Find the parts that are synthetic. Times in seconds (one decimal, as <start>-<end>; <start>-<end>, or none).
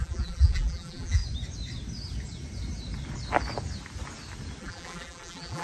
0.0-1.2; 4.6-5.6